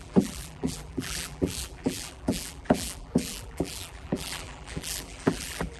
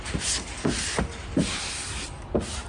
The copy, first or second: first